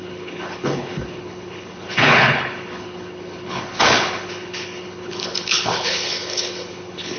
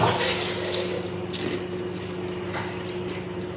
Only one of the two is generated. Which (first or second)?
first